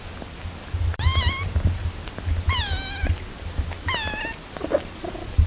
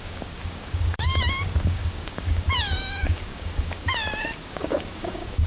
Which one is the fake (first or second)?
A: second